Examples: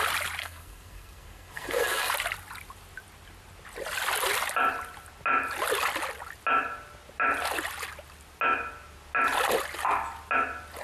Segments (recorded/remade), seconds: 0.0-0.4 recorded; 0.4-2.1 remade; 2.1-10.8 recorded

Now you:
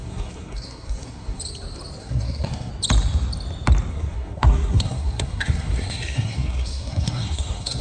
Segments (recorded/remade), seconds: 0.0-1.4 remade; 1.4-2.0 recorded; 2.0-2.7 remade; 2.7-3.9 recorded; 3.9-7.8 remade

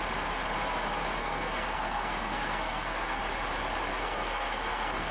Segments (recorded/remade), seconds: 0.0-1.2 recorded; 1.2-3.2 remade; 3.2-3.9 recorded; 3.9-5.1 remade

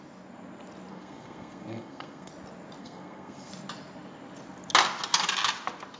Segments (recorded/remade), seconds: 0.0-0.9 recorded; 0.9-2.3 remade; 2.3-2.8 recorded; 2.8-3.5 remade; 3.5-6.0 recorded

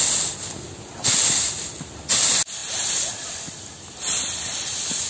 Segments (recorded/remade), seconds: 0.0-5.1 recorded

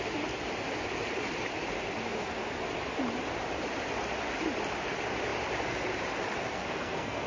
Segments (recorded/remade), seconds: 0.0-6.4 recorded; 6.4-7.3 remade

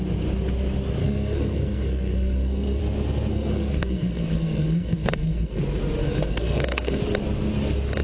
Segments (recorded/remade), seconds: 0.0-1.0 recorded; 1.0-2.8 remade; 2.8-3.3 recorded; 3.3-5.6 remade; 5.6-6.0 recorded; 6.0-7.0 remade; 7.0-8.0 recorded

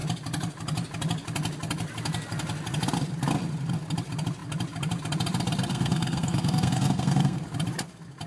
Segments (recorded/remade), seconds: 0.0-5.7 recorded; 5.7-7.4 remade; 7.4-8.3 recorded